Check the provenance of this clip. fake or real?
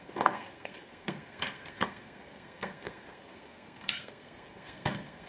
fake